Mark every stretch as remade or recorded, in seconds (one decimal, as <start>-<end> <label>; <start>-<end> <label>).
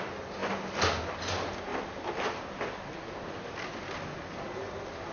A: 0.0-5.1 recorded